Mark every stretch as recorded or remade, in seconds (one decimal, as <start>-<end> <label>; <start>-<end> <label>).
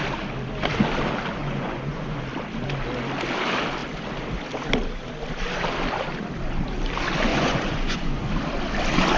0.0-1.4 recorded; 1.4-2.2 remade; 2.2-7.3 recorded; 7.3-8.3 remade; 8.3-9.2 recorded